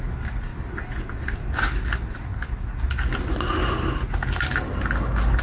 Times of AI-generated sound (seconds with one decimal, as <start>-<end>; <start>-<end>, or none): none